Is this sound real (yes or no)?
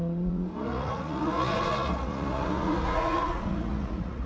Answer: no